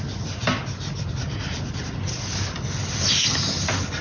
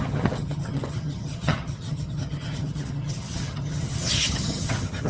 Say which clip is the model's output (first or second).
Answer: second